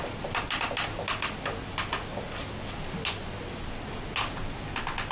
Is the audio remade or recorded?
recorded